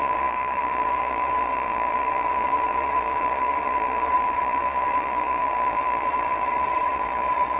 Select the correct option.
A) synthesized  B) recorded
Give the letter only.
A